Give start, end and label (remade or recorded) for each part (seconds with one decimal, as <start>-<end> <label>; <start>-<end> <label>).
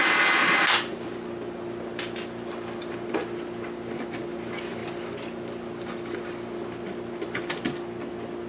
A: 0.0-8.5 recorded